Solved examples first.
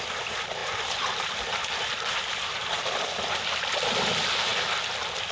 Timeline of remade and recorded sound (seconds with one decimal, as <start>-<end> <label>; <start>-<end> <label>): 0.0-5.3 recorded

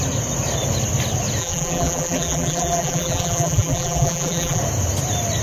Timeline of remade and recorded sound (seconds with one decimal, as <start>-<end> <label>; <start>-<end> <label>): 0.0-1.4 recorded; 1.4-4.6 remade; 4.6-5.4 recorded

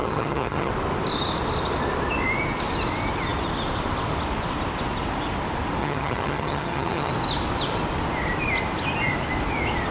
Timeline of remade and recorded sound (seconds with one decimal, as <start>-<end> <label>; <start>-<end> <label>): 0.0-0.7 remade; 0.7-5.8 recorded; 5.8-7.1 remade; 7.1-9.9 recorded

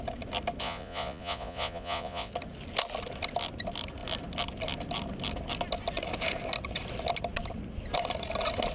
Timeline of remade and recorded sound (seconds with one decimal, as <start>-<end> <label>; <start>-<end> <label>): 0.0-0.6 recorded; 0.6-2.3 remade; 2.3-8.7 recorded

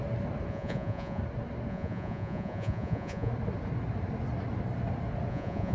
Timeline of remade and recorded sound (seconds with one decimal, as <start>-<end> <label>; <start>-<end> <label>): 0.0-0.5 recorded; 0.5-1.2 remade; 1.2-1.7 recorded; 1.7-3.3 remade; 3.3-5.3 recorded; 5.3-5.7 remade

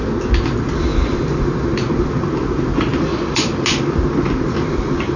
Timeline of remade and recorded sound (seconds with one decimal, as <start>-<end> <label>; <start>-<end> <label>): 0.0-5.2 recorded

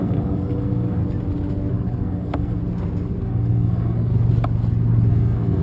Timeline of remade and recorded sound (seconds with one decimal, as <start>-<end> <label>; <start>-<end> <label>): 0.0-1.0 remade; 1.0-1.7 recorded; 1.7-2.6 remade; 2.6-3.2 recorded; 3.2-4.1 remade; 4.1-5.1 recorded; 5.1-5.6 remade